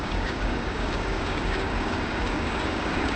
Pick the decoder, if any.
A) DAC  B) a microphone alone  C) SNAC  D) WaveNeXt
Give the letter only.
A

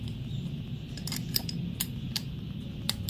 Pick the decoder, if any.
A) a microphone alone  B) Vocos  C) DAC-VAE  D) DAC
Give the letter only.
A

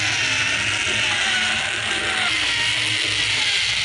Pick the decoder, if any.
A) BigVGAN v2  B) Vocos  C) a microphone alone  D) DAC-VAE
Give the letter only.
C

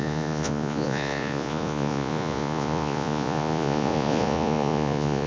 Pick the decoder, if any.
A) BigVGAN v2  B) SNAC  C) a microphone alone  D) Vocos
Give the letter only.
D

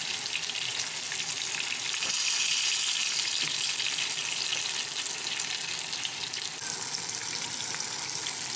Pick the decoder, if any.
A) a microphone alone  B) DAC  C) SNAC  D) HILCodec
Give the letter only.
A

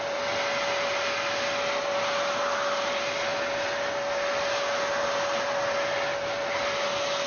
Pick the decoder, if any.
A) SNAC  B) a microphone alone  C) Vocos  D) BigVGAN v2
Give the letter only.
B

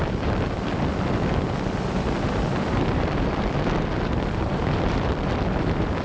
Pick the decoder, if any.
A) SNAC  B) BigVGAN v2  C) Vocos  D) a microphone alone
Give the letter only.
B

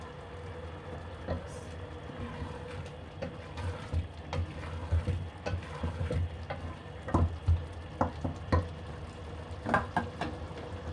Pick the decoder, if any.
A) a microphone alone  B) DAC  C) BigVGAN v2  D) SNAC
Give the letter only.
A